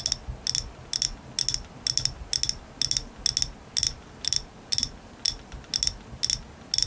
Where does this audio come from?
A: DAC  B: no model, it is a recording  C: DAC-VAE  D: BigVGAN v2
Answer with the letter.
B